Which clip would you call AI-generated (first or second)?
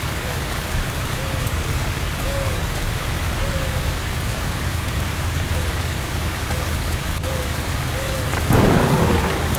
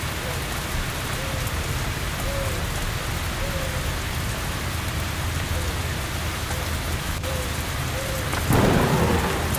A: first